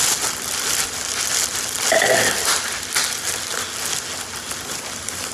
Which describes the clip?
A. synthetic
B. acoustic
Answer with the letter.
B